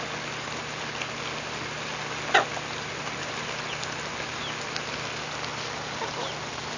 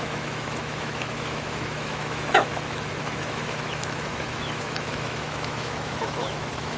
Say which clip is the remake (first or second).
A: second